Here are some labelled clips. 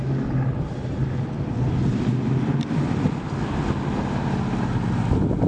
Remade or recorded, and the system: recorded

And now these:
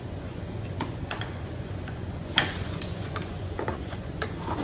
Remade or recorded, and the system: remade, vocoder, Vocos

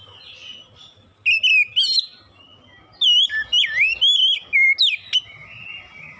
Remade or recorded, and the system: recorded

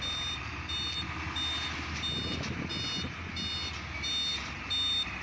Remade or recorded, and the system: recorded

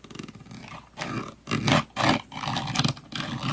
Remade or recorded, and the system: recorded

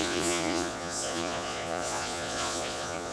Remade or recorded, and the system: remade, vocoder, Vocos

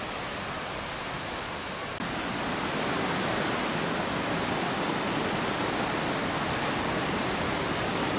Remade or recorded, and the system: recorded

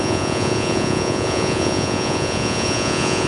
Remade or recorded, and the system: remade, vocoder, Vocos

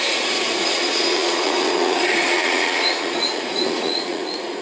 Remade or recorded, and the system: remade, vocoder, Vocos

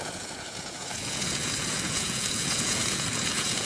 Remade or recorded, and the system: remade, vocoder, Vocos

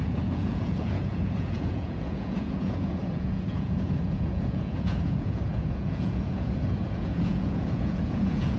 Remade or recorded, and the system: remade, vocoder, Vocos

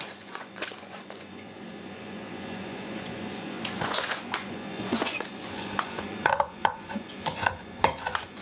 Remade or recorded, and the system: remade, vocoder, Vocos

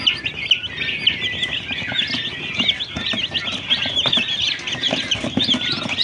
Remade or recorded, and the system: recorded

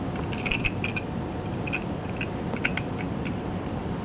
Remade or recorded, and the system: recorded